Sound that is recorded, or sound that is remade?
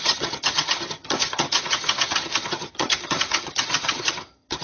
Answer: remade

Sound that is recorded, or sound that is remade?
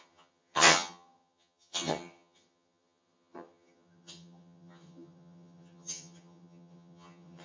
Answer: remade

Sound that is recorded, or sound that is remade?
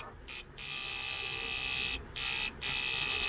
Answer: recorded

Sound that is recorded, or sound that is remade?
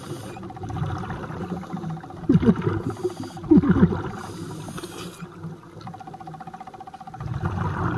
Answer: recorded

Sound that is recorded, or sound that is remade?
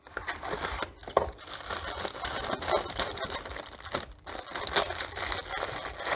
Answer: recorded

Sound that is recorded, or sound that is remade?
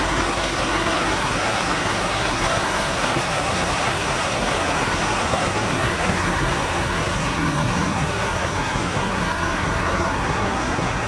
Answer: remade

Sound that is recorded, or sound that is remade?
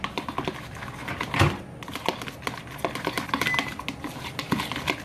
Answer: recorded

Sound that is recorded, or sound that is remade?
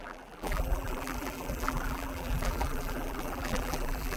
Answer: remade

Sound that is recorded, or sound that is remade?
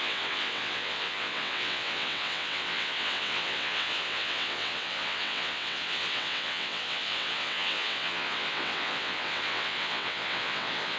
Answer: remade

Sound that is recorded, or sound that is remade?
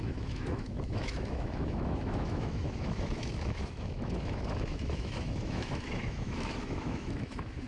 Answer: remade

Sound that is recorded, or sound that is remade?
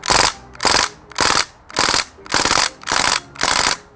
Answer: recorded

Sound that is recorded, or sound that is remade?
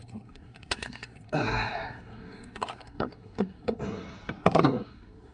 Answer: remade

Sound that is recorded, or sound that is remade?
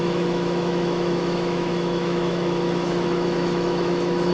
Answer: remade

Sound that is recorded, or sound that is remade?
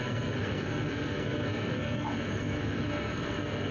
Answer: remade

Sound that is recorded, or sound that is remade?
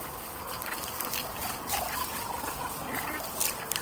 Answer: recorded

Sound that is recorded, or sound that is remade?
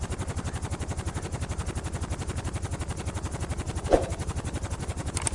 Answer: recorded